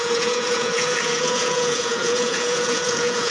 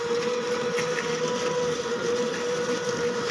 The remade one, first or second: first